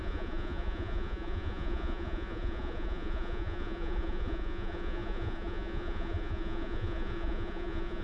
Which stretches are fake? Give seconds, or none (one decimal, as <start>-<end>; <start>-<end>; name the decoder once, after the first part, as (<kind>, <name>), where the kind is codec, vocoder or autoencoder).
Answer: 0.0-8.0 (vocoder, Vocos)